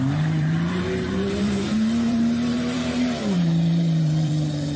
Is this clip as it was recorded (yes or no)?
no